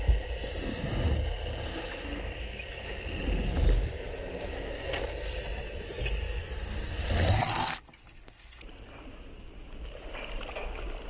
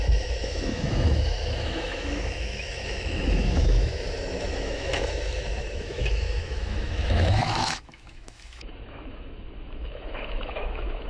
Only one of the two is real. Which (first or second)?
first